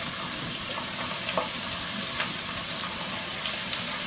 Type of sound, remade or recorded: recorded